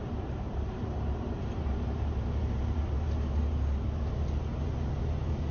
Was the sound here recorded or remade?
remade